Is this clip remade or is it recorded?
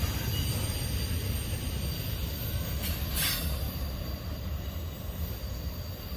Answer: recorded